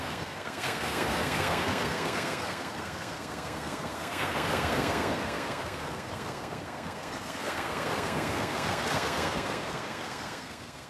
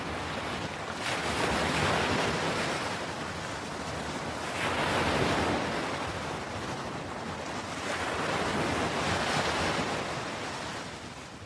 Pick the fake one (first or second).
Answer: first